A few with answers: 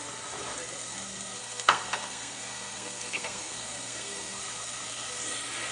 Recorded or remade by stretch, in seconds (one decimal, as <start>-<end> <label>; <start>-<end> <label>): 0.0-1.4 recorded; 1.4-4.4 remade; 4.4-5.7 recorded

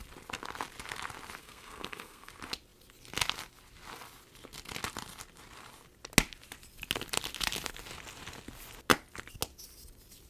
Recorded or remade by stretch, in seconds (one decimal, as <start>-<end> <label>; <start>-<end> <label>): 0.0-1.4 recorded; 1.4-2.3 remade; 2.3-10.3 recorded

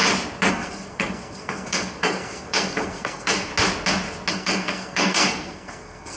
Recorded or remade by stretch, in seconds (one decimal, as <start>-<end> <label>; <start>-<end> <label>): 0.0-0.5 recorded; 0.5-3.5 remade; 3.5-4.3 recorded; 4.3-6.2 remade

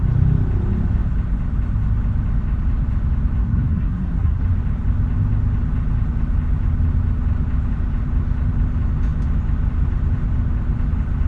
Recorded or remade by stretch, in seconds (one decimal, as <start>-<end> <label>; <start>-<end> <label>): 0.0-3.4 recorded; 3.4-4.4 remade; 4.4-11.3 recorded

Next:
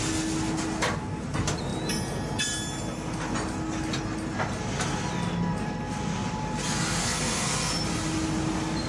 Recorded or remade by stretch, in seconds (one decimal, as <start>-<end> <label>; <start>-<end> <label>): 0.0-7.0 recorded; 7.0-7.7 remade; 7.7-8.9 recorded